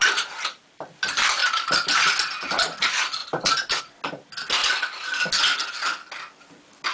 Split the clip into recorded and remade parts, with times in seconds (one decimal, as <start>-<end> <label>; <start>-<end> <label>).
0.0-0.6 remade; 0.6-1.4 recorded; 1.4-2.1 remade; 2.1-3.2 recorded; 3.2-3.8 remade; 3.8-6.9 recorded